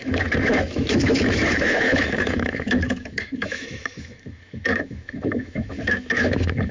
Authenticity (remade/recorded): remade